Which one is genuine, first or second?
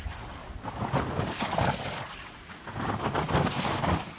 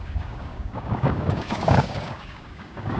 first